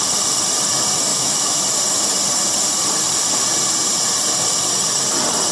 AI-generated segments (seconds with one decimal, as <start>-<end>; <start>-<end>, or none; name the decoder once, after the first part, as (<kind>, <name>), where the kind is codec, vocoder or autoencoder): 1.1-1.6 (autoencoder, DAC-VAE)